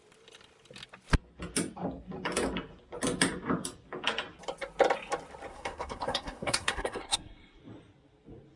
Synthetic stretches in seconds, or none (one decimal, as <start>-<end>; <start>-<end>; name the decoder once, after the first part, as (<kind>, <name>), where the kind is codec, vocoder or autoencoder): 5.5-7.6 (codec, SNAC)